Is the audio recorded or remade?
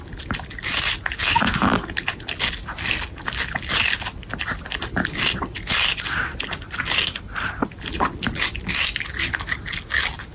recorded